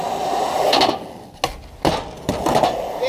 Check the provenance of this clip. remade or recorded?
recorded